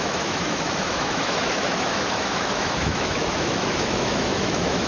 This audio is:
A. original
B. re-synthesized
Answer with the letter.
B